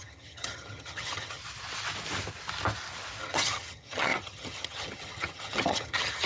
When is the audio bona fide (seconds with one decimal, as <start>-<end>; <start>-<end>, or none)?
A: 1.4-3.2